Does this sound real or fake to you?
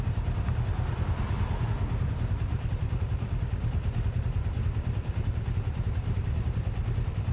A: fake